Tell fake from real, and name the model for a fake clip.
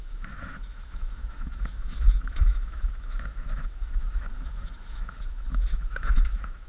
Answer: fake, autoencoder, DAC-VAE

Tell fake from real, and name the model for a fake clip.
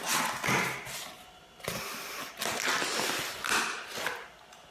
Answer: real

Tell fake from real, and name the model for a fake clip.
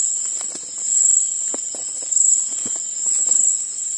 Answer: real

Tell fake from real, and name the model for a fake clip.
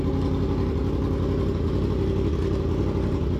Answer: real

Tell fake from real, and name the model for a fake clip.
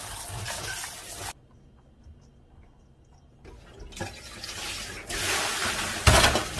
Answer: real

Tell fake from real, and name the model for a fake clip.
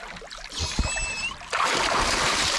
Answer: real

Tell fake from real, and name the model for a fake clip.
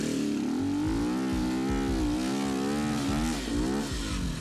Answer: real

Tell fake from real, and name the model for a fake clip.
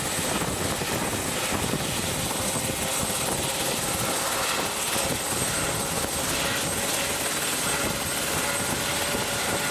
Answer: real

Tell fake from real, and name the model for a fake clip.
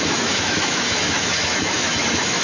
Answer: fake, autoencoder, DAC-VAE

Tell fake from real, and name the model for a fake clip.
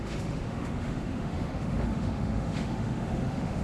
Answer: fake, autoencoder, DAC-VAE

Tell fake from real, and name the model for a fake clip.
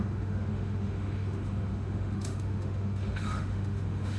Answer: fake, autoencoder, DAC-VAE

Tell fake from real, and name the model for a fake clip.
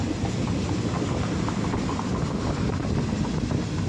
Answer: real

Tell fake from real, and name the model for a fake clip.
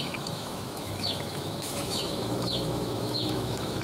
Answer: fake, autoencoder, DAC-VAE